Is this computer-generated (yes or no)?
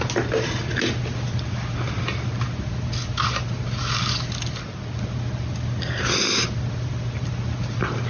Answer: no